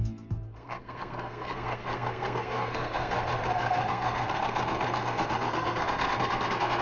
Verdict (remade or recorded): remade